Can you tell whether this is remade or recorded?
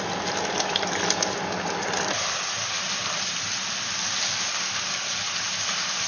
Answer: recorded